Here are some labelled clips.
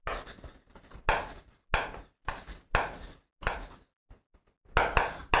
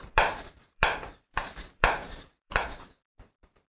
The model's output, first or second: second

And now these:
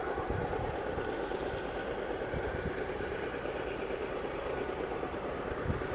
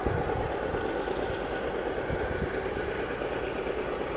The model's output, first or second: first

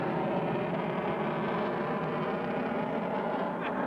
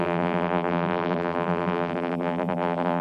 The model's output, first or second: second